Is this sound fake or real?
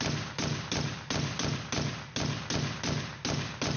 real